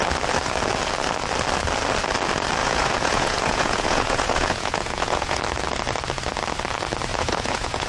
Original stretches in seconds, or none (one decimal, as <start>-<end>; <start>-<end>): 0.0-2.6; 5.4-7.1